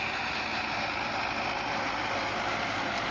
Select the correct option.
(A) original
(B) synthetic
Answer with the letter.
A